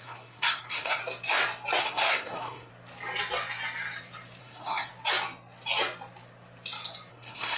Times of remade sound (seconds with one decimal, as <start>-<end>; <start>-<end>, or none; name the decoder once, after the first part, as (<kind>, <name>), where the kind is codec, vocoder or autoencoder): 0.0-1.0 (codec, SNAC); 1.8-2.7; 4.4-4.9; 7.1-7.6